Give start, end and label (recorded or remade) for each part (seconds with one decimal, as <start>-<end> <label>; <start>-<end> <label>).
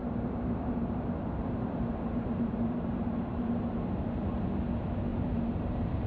0.0-3.7 remade; 3.7-5.1 recorded; 5.1-6.1 remade